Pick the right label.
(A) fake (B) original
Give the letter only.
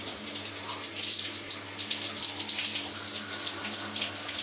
B